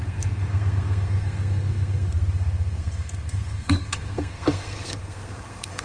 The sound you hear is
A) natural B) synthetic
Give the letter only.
B